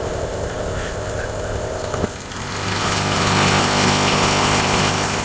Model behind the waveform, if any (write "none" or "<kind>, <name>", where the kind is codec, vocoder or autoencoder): codec, ZipCodec